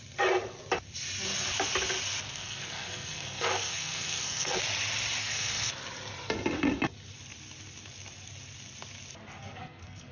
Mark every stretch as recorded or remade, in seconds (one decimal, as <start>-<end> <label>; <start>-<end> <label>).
0.0-2.3 recorded; 2.3-4.6 remade; 4.6-5.2 recorded; 5.2-5.7 remade; 5.7-9.4 recorded; 9.4-10.1 remade